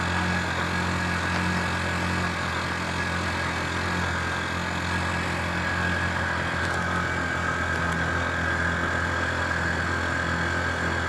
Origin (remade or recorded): recorded